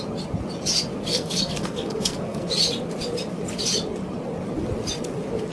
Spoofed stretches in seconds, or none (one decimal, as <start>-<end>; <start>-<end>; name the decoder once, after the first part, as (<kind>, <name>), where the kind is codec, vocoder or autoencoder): 1.1-2.5 (codec, SNAC)